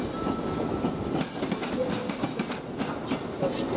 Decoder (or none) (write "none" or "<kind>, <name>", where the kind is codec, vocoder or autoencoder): none